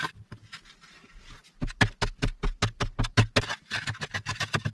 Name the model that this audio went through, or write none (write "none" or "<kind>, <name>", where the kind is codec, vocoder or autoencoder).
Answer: none